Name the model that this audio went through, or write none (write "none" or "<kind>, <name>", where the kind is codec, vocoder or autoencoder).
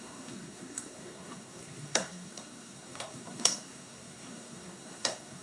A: codec, SNAC